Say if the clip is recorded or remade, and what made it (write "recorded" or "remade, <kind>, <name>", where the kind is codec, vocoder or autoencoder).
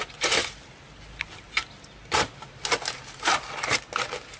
recorded